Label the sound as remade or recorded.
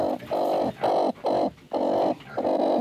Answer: recorded